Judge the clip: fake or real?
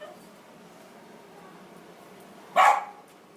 real